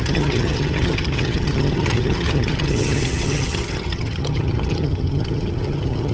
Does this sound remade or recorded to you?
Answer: remade